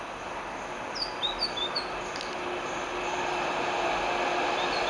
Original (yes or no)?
yes